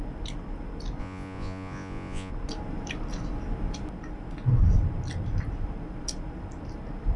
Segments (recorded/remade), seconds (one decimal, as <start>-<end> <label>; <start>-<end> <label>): 0.0-1.0 recorded; 1.0-2.3 remade; 2.3-7.2 recorded